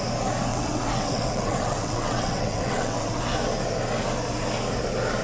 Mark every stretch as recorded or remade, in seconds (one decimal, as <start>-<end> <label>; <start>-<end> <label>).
0.0-0.5 recorded; 0.5-3.2 remade; 3.2-5.2 recorded